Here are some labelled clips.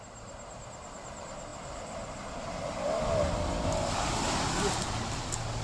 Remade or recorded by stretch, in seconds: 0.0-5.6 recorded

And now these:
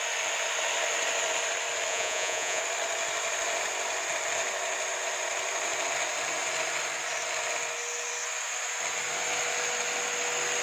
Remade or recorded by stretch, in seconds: 0.0-1.9 recorded; 1.9-2.6 remade; 2.6-10.6 recorded

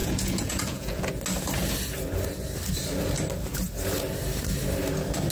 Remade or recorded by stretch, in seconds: 0.0-1.1 remade; 1.1-5.3 recorded

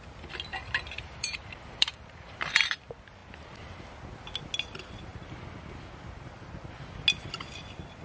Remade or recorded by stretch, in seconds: 0.0-0.5 recorded; 0.5-2.5 remade; 2.5-8.0 recorded

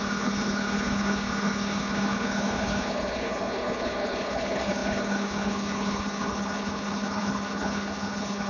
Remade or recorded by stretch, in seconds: 0.0-8.5 remade